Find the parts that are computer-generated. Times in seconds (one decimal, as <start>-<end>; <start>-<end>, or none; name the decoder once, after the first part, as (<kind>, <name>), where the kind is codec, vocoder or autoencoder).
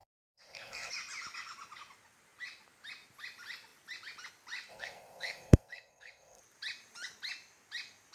0.0-0.9 (codec, SNAC); 4.7-6.4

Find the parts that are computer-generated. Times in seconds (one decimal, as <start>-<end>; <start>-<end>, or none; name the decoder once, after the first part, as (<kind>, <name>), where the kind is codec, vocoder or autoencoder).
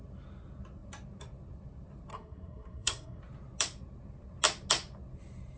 2.1-3.2 (codec, SNAC)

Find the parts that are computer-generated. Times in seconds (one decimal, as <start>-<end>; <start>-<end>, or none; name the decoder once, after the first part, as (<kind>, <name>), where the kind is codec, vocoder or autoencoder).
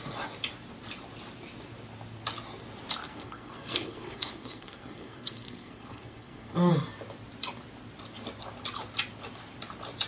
3.0-6.7 (codec, SNAC)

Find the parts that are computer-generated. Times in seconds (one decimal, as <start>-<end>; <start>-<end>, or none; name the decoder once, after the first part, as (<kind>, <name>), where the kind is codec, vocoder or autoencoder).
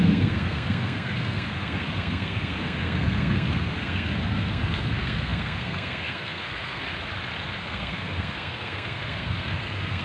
0.0-6.9 (codec, SNAC); 7.4-10.0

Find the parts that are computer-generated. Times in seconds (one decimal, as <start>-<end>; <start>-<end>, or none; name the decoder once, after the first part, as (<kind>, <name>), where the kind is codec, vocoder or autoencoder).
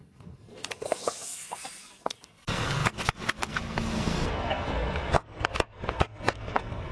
0.0-6.9 (codec, SNAC)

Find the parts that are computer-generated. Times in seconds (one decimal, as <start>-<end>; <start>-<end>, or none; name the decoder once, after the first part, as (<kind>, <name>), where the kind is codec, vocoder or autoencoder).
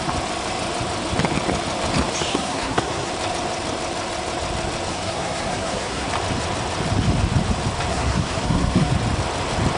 2.3-3.1 (codec, SNAC); 4.9-6.1; 7.9-8.9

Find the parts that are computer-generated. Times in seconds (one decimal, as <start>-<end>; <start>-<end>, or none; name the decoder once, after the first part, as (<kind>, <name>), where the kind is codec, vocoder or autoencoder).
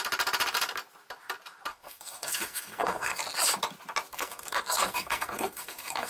1.7-3.2 (codec, SNAC); 4.1-6.1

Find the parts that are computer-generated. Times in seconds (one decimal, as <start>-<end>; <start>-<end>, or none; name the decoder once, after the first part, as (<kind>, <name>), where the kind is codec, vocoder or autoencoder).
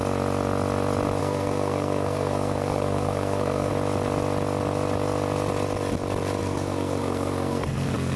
1.2-3.7 (codec, SNAC); 6.4-8.2